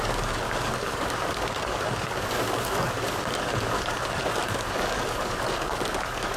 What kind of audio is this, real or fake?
fake